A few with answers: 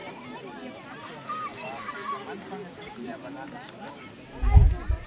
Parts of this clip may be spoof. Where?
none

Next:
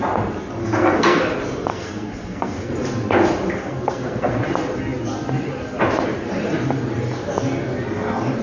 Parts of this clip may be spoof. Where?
0.6-1.2 (codec, SNAC); 1.7-2.7; 3.6-4.4

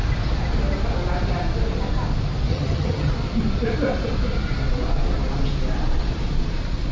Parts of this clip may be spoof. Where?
2.5-3.1 (vocoder, HiFi-GAN)

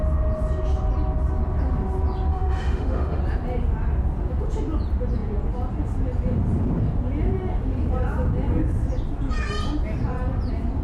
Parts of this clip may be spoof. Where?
2.3-3.2 (autoencoder, DAC-VAE)

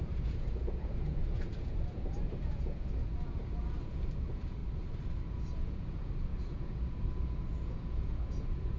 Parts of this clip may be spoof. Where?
0.0-4.6 (vocoder, Vocos); 5.3-8.8

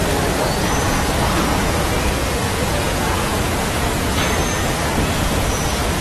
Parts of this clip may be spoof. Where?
0.6-6.0 (vocoder, Vocos)